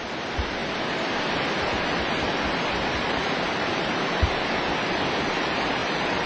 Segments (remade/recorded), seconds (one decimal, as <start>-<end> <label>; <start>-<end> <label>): 0.0-5.8 recorded; 5.8-6.3 remade